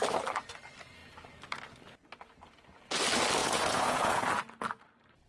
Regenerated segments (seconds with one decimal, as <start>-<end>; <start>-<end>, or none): 3.4-4.2